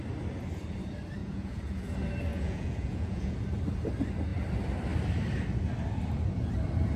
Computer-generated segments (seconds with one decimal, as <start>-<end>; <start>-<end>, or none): 1.2-1.9; 2.3-3.4